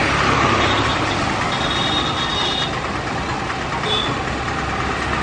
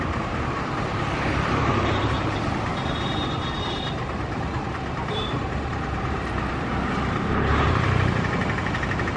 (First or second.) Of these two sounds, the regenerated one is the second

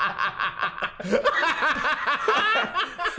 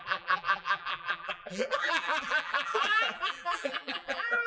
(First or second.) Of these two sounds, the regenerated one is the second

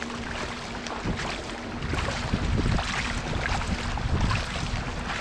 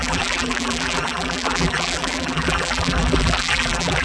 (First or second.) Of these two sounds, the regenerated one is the second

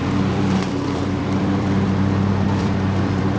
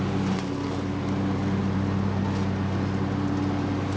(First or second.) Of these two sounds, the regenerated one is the first